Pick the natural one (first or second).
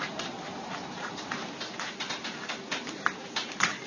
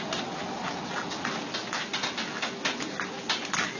second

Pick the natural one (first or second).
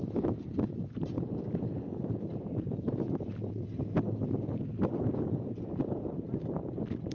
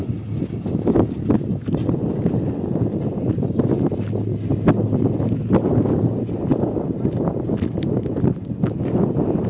second